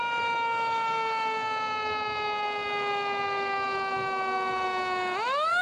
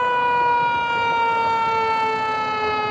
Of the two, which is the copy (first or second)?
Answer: first